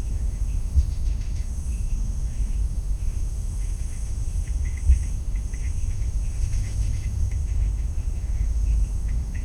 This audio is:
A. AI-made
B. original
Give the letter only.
A